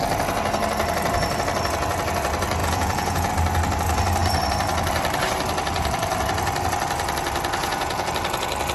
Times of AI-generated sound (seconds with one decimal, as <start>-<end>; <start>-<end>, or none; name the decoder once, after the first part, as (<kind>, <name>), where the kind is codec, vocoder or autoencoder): 2.6-3.3 (vocoder, Vocos); 7.6-8.1